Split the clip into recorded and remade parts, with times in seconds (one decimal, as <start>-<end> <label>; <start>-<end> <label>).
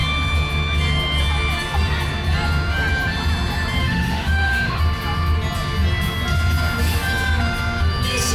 0.0-3.8 recorded; 3.8-4.8 remade; 4.8-8.3 recorded